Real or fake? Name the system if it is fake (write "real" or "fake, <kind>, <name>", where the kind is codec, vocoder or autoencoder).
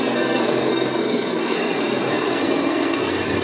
fake, codec, SNAC